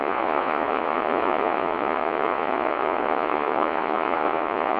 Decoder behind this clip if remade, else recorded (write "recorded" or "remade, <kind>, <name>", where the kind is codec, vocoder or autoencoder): remade, vocoder, Vocos